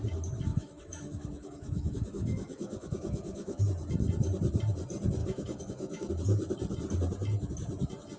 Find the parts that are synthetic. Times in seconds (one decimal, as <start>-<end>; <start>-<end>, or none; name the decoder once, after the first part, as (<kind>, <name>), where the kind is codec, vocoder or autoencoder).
0.5-3.6 (autoencoder, DAC-VAE); 5.2-6.1